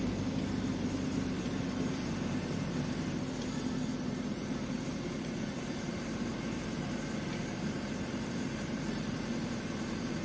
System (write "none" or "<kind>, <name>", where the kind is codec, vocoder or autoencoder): vocoder, BigVGAN v2